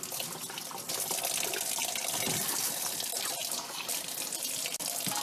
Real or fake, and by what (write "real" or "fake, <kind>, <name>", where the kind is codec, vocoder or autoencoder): real